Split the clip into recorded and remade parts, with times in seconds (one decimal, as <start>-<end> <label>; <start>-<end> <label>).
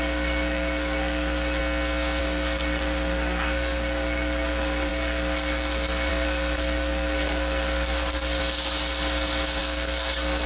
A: 0.0-1.6 remade; 1.6-2.2 recorded; 2.2-8.4 remade; 8.4-9.6 recorded; 9.6-10.5 remade